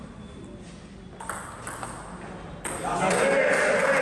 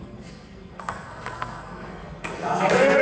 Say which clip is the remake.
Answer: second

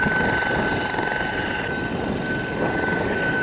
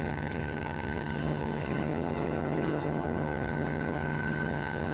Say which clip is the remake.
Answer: second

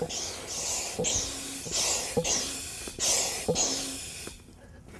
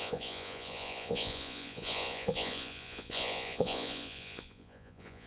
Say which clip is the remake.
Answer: second